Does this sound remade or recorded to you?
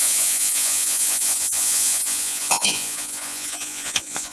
remade